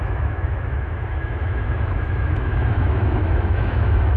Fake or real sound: fake